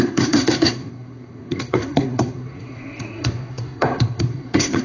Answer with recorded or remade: remade